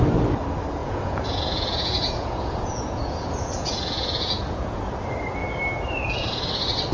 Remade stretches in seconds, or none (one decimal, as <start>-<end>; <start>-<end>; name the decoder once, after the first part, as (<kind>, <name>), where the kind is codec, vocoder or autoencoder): 0.8-4.9 (vocoder, Vocos)